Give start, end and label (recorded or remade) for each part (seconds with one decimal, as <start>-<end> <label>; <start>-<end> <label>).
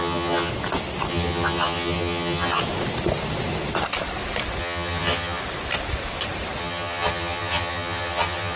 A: 0.0-0.5 remade; 0.5-1.1 recorded; 1.1-2.6 remade; 2.6-4.6 recorded; 4.6-5.4 remade; 5.4-6.6 recorded; 6.6-8.6 remade